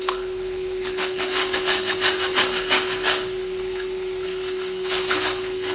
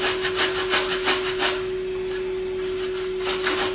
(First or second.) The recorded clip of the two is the second